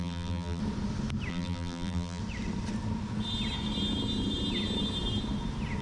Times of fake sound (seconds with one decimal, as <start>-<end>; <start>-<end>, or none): 0.0-0.6; 1.3-2.2